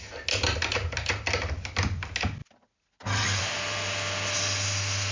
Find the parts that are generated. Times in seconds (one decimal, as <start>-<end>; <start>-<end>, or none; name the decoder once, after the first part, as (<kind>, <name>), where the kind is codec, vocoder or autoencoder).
none